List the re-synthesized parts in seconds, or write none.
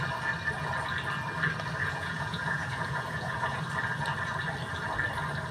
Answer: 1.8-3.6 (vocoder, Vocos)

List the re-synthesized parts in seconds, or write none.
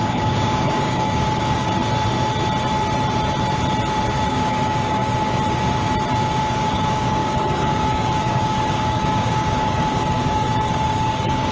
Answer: 0.0-1.8 (codec, DAC); 4.3-5.0; 6.4-11.5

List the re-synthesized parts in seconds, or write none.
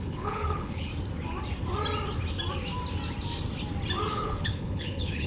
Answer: 0.0-0.9 (codec, HILCodec); 4.1-5.3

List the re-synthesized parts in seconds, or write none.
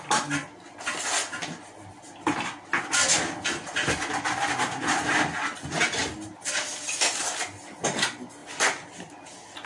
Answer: none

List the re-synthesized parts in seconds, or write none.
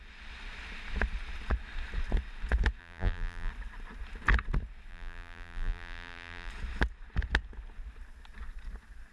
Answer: 2.8-3.5 (vocoder, BigVGAN v2); 4.9-6.5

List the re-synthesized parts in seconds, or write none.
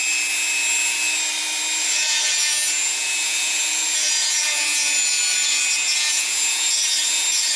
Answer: 1.8-7.6 (vocoder, Vocos)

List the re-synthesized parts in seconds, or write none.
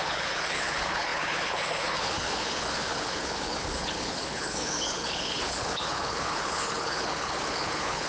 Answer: 0.0-8.1 (codec, HILCodec)